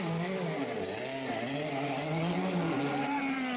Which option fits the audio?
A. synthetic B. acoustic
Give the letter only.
B